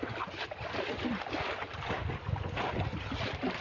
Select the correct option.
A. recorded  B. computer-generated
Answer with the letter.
A